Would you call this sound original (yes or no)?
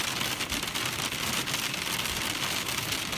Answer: yes